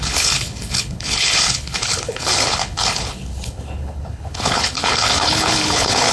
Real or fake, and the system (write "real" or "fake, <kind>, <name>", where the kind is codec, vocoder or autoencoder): fake, codec, HILCodec